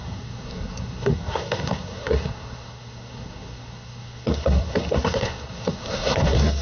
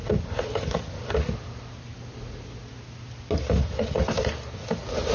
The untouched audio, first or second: second